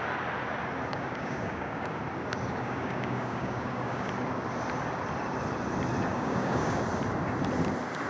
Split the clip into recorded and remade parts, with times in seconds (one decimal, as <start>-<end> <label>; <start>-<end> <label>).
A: 0.0-0.9 recorded; 0.9-2.0 remade; 2.0-2.5 recorded; 2.5-4.1 remade; 4.1-6.1 recorded; 6.1-6.8 remade; 6.8-8.1 recorded